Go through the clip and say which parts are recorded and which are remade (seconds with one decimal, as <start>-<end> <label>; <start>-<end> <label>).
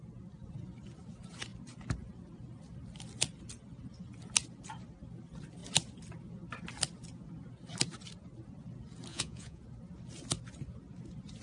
0.0-9.1 recorded; 9.1-9.6 remade; 9.6-11.4 recorded